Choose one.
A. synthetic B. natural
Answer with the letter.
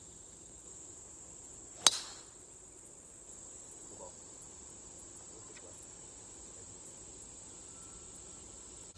B